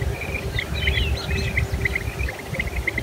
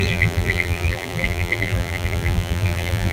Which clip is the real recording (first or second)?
first